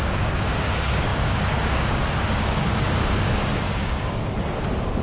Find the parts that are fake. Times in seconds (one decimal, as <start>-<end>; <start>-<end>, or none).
0.0-4.2

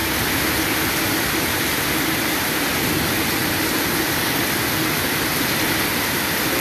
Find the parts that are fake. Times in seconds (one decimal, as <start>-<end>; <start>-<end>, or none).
none

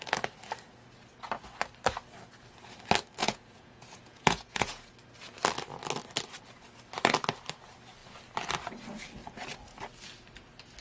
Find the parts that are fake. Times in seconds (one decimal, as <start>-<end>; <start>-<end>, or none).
3.2-4.9

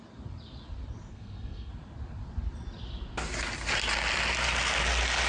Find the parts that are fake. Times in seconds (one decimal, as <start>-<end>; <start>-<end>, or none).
1.1-1.7